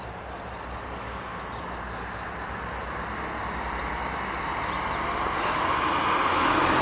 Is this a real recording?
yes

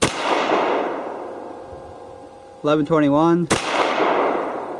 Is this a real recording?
yes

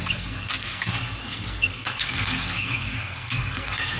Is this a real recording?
no